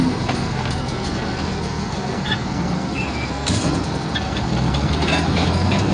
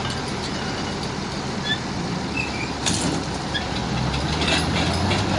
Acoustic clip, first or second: second